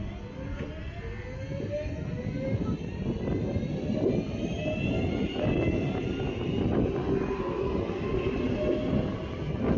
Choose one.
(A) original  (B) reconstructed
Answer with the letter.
A